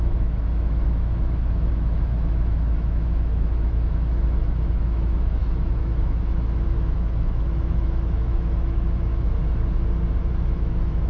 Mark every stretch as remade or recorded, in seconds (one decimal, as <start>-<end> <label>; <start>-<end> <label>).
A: 0.0-9.4 remade; 9.4-10.3 recorded; 10.3-11.1 remade